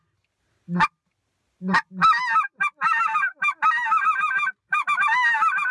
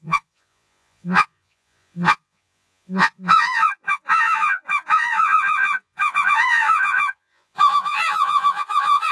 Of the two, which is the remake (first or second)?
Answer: second